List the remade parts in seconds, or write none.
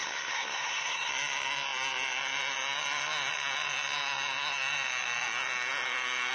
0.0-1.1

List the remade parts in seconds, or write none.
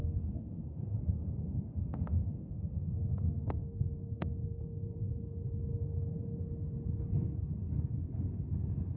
0.0-5.1; 5.7-6.4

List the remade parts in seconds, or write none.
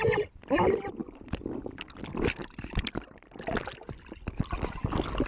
none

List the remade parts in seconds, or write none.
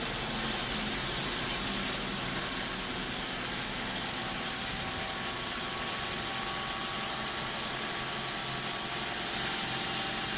none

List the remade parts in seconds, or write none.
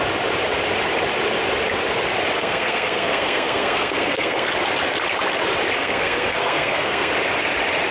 2.3-4.5; 5.8-7.1